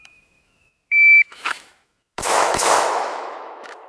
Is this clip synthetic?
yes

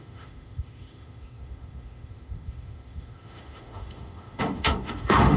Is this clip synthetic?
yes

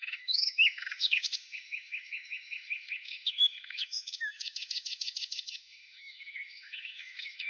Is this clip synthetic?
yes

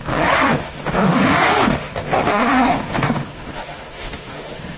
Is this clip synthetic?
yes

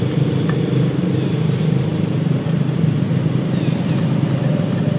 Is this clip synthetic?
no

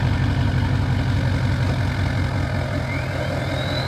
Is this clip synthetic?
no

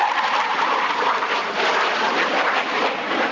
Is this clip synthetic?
no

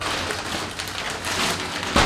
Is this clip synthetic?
no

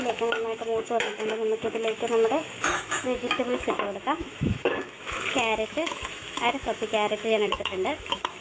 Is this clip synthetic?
yes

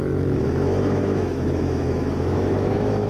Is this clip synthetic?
yes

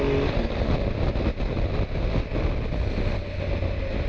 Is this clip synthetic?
no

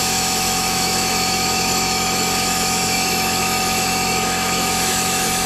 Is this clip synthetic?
yes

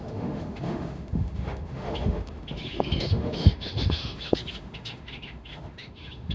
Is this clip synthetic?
yes